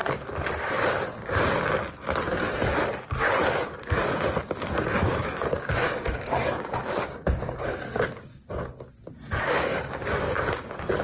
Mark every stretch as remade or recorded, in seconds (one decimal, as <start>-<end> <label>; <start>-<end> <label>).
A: 0.0-4.4 recorded; 4.4-8.3 remade; 8.3-9.4 recorded; 9.4-11.0 remade